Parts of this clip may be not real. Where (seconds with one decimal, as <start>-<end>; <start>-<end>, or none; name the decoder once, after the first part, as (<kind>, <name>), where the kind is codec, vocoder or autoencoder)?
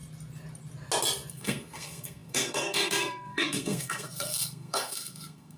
1.3-5.6 (codec, SNAC)